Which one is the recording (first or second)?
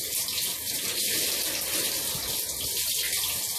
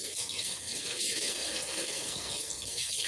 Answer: first